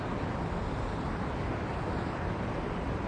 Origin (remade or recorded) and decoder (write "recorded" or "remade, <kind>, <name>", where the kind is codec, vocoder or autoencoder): remade, vocoder, BigVGAN v2